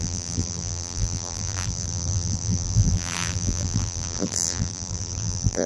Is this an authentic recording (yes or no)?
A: no